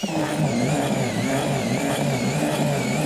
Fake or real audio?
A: real